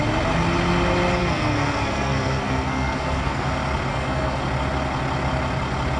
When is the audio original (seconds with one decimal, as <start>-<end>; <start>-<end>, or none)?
0.0-1.2; 3.5-3.9; 4.4-6.0